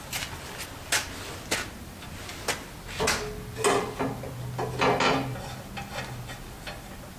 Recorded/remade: recorded